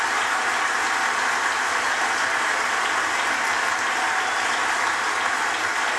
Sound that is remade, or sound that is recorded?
recorded